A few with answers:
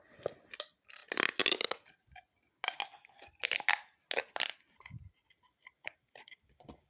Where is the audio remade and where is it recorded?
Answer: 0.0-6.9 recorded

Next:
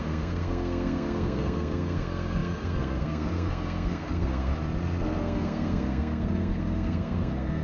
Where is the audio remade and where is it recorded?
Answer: 0.0-4.5 remade; 4.5-5.2 recorded; 5.2-7.6 remade

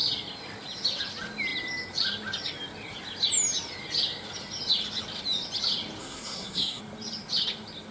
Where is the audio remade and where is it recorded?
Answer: 0.0-6.0 recorded; 6.0-6.8 remade; 6.8-7.9 recorded

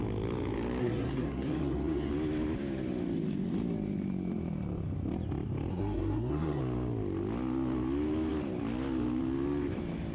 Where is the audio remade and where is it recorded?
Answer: 0.0-0.8 recorded; 0.8-2.1 remade; 2.1-5.7 recorded; 5.7-6.6 remade; 6.6-10.1 recorded

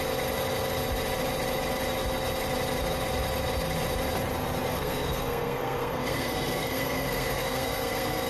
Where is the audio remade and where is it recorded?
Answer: 0.0-4.7 recorded; 4.7-8.3 remade

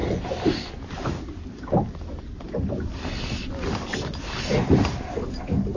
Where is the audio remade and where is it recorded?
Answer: 0.0-5.8 recorded